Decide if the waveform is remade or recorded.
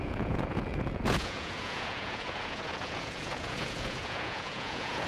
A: remade